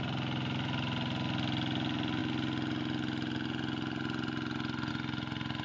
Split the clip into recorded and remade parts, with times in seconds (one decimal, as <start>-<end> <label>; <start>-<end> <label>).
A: 0.0-5.6 recorded